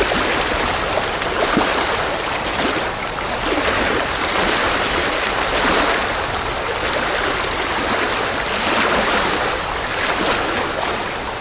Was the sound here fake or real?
real